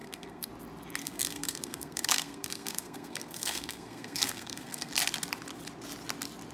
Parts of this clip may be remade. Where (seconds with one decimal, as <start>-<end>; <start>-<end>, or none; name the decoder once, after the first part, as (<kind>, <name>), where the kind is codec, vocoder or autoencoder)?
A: 0.0-0.5 (codec, SNAC); 1.0-4.9